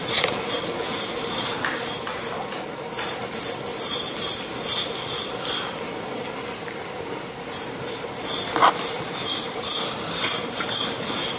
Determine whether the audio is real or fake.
real